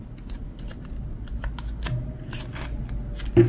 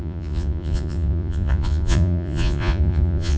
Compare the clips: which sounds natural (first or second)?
first